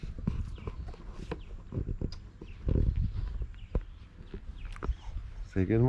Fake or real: real